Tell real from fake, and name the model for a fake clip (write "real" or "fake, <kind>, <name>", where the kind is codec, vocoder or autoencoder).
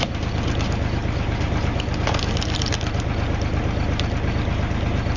real